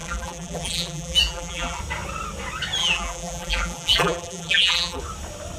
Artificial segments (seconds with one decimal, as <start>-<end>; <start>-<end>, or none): 0.0-1.8; 2.8-5.0